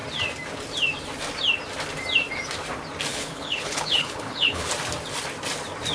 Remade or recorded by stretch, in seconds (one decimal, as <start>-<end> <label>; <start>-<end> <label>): 0.0-3.1 recorded; 3.1-4.7 remade; 4.7-5.9 recorded